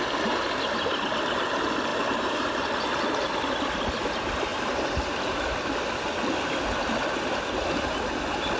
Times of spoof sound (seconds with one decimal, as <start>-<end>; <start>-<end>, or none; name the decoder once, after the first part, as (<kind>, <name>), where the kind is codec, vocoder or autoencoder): 1.9-2.8 (vocoder, BigVGAN v2)